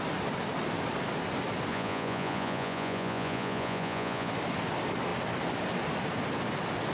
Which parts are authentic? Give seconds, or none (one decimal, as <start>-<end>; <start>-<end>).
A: 0.0-1.7; 4.3-6.9